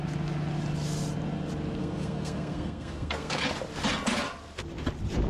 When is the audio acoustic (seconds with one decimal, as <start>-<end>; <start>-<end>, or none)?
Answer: 0.0-1.8; 3.4-5.3